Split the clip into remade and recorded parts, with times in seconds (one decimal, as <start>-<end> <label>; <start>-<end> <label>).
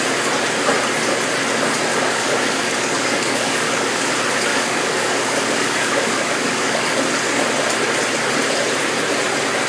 0.0-1.9 recorded; 1.9-4.0 remade; 4.0-4.5 recorded; 4.5-7.0 remade; 7.0-9.7 recorded